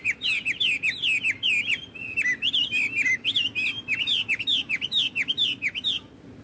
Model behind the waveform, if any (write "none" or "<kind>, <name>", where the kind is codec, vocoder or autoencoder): none